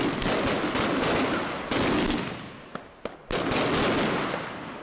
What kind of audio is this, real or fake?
real